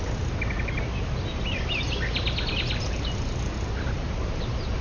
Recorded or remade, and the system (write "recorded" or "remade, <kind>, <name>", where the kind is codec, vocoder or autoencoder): recorded